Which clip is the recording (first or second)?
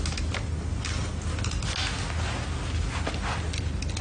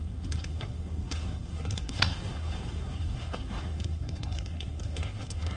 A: first